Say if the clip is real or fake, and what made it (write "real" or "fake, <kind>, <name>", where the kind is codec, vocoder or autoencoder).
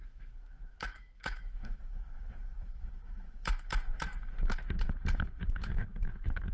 fake, autoencoder, DAC-VAE